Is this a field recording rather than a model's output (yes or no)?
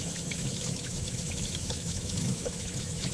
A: no